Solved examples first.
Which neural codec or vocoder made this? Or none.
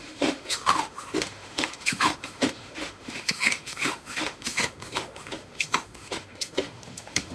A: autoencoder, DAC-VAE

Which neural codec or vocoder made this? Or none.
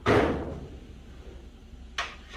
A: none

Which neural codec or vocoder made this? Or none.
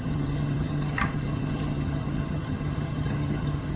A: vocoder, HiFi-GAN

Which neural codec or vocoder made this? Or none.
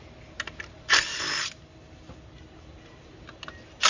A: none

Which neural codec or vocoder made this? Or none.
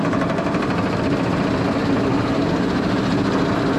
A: none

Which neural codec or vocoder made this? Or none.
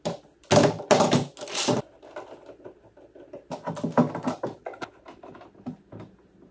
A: none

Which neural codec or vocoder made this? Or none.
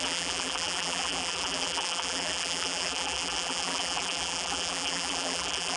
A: vocoder, BigVGAN v2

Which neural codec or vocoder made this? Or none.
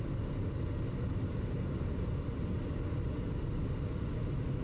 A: none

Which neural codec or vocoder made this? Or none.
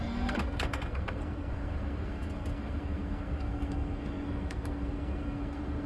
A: codec, SNAC